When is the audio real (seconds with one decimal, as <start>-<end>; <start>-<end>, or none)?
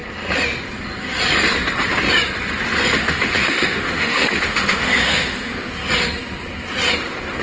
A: 0.0-3.0; 5.7-7.4